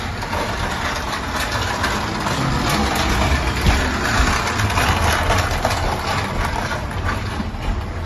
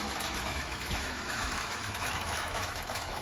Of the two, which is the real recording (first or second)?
first